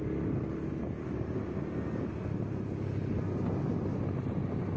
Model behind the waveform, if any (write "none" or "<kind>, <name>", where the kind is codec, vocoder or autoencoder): none